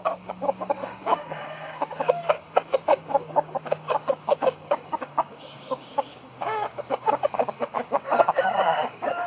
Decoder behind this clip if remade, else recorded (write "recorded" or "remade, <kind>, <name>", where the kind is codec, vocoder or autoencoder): remade, codec, DAC